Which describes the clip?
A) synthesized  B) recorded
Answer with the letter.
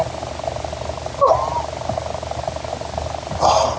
B